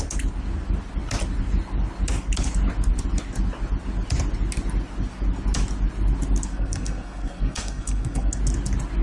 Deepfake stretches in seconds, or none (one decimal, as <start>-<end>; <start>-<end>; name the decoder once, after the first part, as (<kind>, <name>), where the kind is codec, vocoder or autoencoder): 6.5-8.4 (codec, SNAC)